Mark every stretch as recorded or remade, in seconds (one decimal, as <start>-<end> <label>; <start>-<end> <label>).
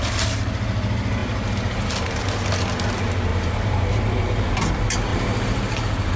0.0-3.3 recorded; 3.3-4.5 remade; 4.5-5.1 recorded; 5.1-6.2 remade